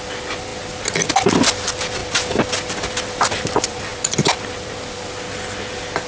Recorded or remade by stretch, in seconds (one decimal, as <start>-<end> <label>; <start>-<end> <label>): 0.0-6.1 recorded